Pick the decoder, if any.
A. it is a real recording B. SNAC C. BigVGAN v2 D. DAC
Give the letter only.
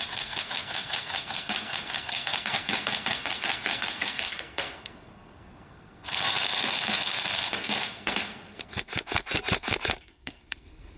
B